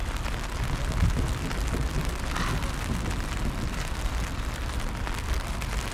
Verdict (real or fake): real